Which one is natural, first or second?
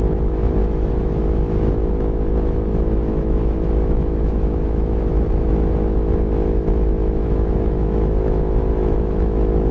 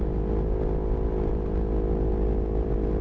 second